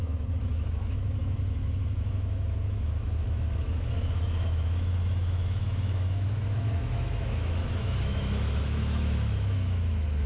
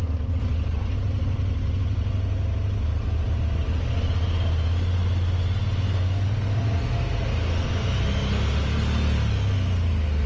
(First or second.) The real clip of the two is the second